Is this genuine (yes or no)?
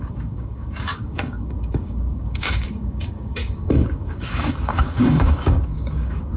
no